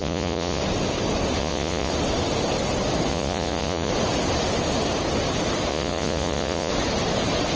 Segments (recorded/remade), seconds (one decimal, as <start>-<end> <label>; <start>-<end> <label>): 0.0-0.6 remade; 0.6-1.4 recorded; 1.4-1.9 remade; 1.9-3.1 recorded; 3.1-3.9 remade; 3.9-5.7 recorded; 5.7-6.7 remade; 6.7-7.6 recorded